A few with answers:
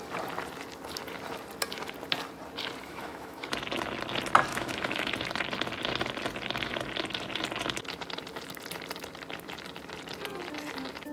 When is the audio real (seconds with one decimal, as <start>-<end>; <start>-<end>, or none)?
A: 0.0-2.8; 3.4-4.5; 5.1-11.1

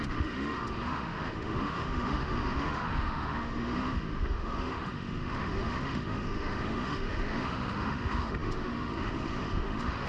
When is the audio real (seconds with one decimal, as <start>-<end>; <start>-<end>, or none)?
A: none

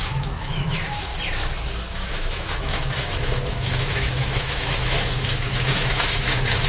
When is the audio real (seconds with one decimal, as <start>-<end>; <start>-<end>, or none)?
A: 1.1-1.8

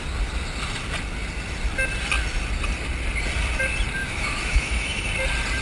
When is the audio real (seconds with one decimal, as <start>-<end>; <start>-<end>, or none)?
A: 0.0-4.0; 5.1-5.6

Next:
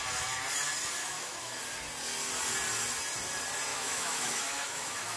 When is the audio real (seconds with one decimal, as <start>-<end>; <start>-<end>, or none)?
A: 0.0-1.0; 1.6-3.7

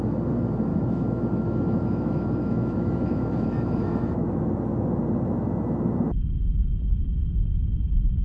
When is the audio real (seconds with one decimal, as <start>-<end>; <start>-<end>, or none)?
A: 0.0-0.7; 4.5-8.2

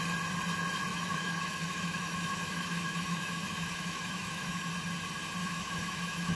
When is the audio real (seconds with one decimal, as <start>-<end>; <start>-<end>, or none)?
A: 0.0-0.9; 4.7-5.4